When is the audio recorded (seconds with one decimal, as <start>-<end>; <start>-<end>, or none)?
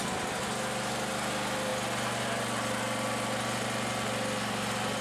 0.0-5.0